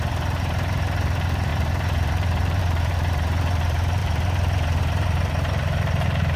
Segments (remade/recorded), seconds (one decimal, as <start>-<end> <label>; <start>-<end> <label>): 0.0-6.4 remade